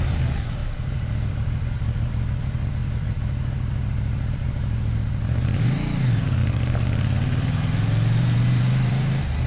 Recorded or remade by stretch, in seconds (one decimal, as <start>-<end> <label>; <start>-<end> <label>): 0.0-9.5 remade